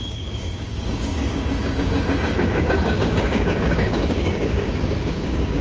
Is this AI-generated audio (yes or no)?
yes